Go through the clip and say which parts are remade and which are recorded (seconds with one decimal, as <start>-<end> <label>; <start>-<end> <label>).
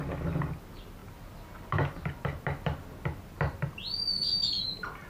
0.0-5.1 recorded